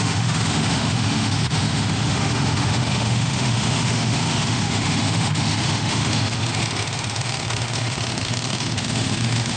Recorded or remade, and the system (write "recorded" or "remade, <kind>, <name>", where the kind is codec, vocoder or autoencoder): remade, autoencoder, DAC-VAE